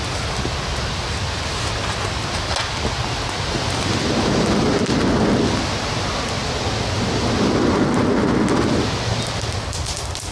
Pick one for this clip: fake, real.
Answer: real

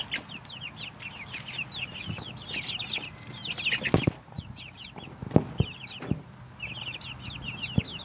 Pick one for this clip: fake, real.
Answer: real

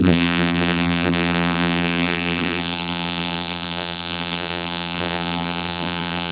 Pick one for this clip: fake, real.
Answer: fake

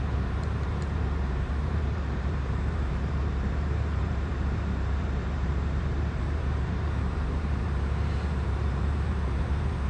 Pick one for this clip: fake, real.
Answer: fake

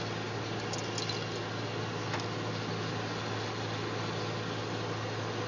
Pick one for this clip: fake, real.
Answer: real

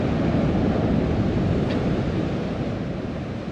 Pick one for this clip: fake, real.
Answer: fake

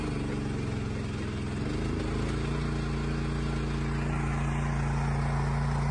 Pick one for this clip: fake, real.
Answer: real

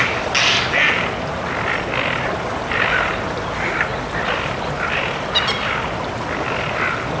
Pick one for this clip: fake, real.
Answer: real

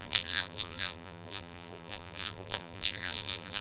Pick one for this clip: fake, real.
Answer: fake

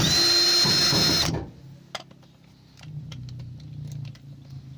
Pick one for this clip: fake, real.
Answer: real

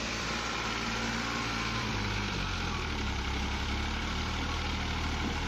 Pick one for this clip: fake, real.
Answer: fake